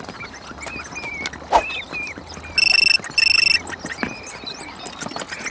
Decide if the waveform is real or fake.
real